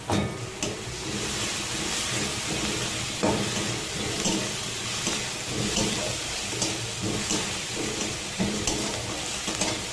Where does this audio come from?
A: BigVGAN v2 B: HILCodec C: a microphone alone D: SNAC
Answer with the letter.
C